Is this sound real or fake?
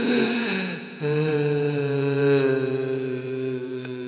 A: fake